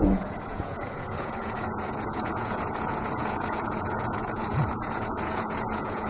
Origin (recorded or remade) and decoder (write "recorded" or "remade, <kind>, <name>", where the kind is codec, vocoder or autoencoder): remade, vocoder, Vocos